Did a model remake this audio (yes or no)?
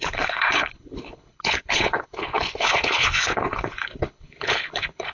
yes